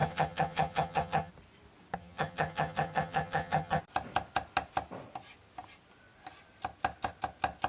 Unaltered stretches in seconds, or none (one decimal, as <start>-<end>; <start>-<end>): 1.3-2.0; 3.8-7.7